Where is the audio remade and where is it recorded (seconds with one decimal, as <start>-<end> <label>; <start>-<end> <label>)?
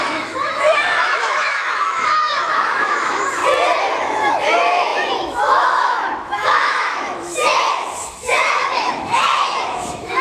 0.0-3.4 remade; 3.4-4.0 recorded; 4.0-10.2 remade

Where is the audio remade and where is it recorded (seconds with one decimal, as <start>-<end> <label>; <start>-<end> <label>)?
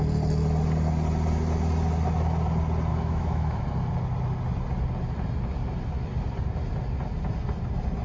0.0-2.9 recorded; 2.9-3.6 remade; 3.6-8.0 recorded